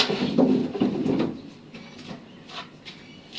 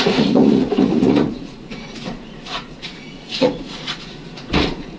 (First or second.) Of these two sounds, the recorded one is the first